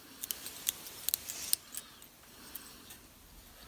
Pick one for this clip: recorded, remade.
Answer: recorded